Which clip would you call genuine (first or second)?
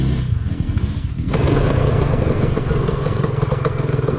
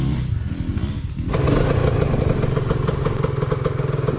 second